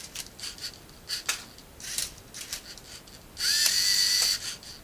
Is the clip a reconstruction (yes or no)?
no